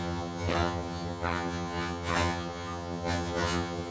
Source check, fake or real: fake